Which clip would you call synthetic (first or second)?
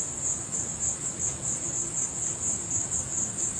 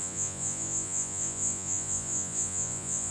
second